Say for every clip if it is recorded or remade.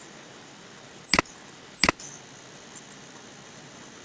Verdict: recorded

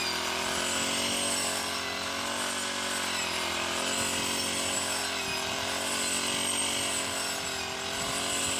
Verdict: recorded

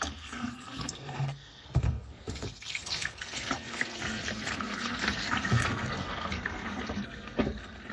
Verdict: remade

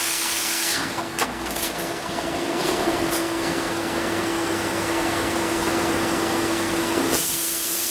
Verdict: remade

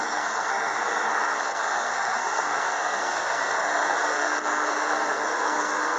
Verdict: remade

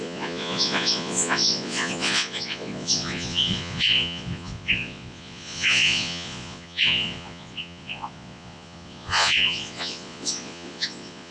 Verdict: remade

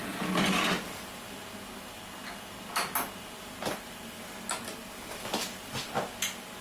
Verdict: recorded